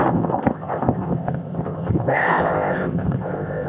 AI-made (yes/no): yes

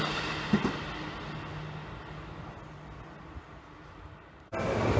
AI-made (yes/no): no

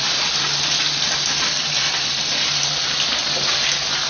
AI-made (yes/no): no